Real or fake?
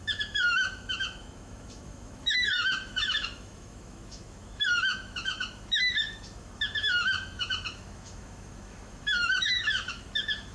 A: fake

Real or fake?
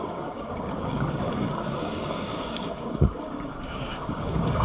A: fake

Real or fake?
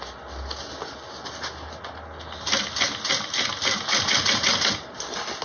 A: real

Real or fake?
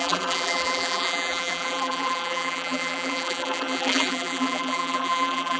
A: fake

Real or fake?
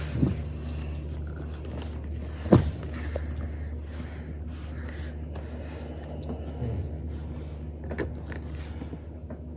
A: real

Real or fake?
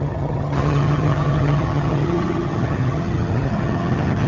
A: fake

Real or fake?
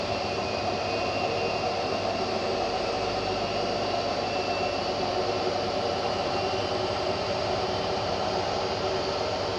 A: fake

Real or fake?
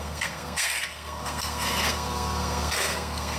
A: fake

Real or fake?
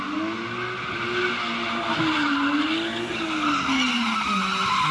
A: real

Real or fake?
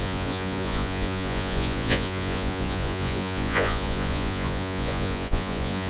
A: fake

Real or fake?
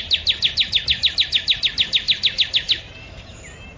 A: real